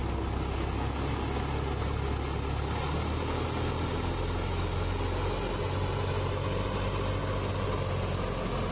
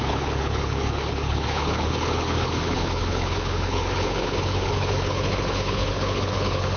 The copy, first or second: second